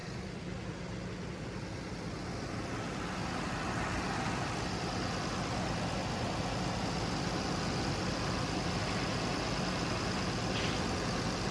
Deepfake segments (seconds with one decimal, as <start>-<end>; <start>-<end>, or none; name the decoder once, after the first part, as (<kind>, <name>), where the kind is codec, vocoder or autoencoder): 0.0-1.0 (vocoder, BigVGAN v2)